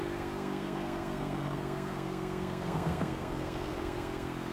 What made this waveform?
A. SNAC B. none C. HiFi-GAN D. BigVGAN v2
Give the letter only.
A